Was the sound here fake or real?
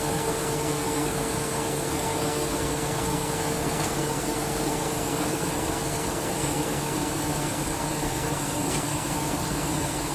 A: fake